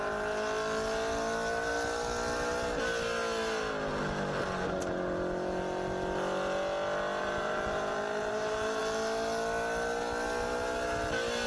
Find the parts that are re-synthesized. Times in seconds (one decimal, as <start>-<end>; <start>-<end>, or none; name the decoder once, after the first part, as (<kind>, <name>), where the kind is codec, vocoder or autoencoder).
7.2-8.8 (vocoder, BigVGAN v2)